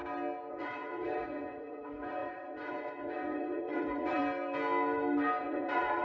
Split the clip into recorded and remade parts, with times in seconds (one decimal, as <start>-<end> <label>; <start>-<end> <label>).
0.0-0.5 recorded; 0.5-4.2 remade; 4.2-5.4 recorded; 5.4-6.0 remade

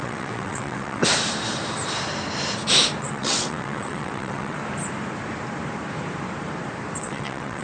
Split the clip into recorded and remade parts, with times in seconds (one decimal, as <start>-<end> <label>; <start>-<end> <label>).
0.0-1.0 remade; 1.0-3.0 recorded; 3.0-4.6 remade; 4.6-7.0 recorded; 7.0-7.6 remade

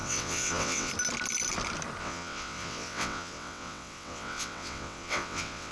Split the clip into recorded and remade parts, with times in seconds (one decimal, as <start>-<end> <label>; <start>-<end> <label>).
0.0-0.9 remade; 0.9-2.0 recorded; 2.0-5.7 remade